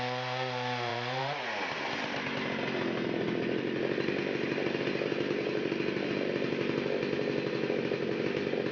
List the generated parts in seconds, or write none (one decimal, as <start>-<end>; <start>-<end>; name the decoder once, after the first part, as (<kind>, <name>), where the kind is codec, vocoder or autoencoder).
0.9-1.4 (vocoder, BigVGAN v2)